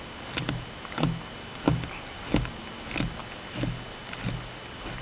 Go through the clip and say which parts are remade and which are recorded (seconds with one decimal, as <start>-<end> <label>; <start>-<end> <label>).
0.0-5.0 recorded